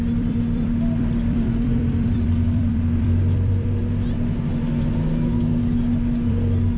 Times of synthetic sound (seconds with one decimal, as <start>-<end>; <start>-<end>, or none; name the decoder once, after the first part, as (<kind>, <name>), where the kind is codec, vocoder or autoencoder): 0.0-3.8 (vocoder, BigVGAN v2); 6.3-6.8